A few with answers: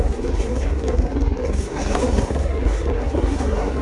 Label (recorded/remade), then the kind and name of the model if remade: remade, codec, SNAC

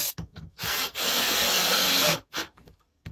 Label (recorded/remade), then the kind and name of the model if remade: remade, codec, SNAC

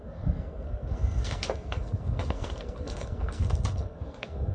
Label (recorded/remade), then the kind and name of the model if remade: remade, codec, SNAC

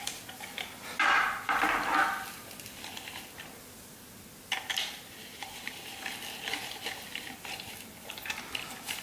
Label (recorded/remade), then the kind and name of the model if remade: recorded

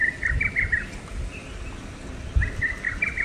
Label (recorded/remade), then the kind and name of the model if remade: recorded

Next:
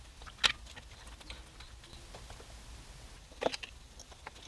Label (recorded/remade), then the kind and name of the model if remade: recorded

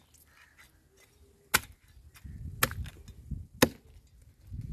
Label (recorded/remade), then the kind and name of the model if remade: recorded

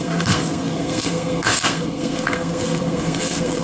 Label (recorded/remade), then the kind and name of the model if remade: remade, codec, SNAC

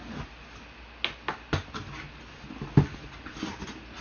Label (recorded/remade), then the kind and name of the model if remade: recorded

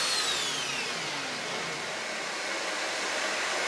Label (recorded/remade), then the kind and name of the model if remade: recorded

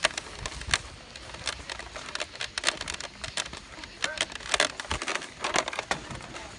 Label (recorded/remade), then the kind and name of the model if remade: recorded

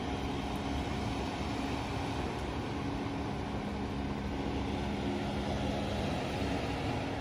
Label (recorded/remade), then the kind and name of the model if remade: recorded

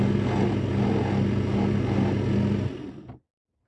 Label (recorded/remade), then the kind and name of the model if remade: recorded